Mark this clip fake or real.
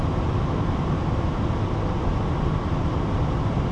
real